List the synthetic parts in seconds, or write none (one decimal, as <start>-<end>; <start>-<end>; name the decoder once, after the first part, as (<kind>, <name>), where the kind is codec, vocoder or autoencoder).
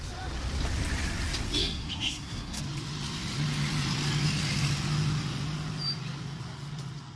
1.6-2.6 (codec, SNAC)